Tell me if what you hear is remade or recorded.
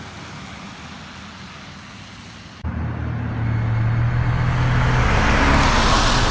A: recorded